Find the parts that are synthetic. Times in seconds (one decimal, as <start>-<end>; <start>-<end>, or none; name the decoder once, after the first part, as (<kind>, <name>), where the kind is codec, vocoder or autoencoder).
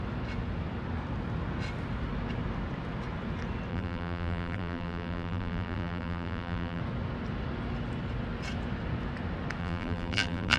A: 3.7-6.8 (vocoder, BigVGAN v2); 9.6-10.6